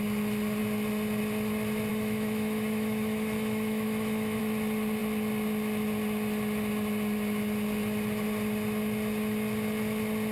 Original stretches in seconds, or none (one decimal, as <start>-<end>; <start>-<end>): 0.0-1.9; 4.4-10.3